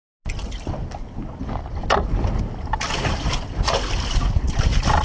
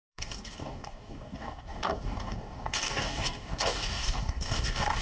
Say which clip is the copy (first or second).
second